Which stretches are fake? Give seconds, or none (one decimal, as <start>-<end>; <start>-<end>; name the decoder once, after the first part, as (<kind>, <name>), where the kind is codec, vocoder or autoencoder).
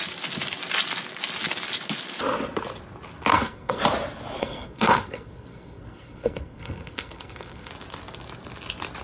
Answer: 3.3-3.8 (codec, SNAC); 4.4-7.7